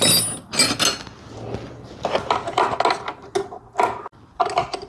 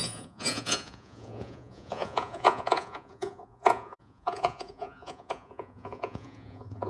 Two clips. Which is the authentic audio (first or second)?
first